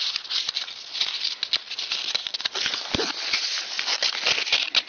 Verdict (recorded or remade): recorded